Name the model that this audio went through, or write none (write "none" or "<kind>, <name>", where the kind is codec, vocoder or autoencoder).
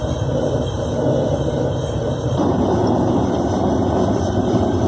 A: none